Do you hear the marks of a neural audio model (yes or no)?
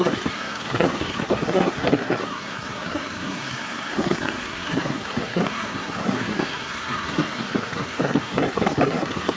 yes